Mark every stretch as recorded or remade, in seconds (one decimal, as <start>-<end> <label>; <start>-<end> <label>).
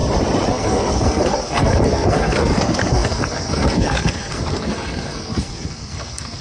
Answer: 0.0-0.5 recorded; 0.5-6.4 remade